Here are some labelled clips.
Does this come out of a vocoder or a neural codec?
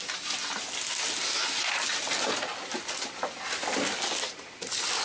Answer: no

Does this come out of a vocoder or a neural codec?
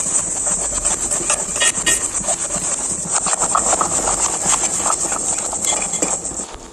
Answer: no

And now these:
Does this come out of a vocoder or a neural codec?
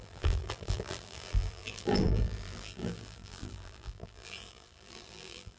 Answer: yes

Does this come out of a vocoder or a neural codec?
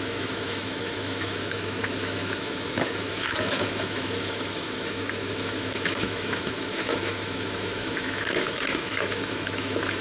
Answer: yes